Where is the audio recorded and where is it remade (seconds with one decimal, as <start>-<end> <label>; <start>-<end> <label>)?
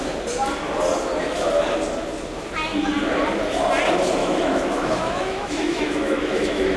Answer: 0.0-4.2 recorded; 4.2-6.8 remade